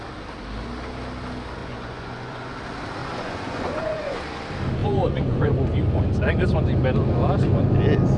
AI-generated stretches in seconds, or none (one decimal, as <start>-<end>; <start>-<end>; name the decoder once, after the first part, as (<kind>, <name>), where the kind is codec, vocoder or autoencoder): 1.6-2.5 (vocoder, Vocos); 3.0-4.2; 4.8-5.5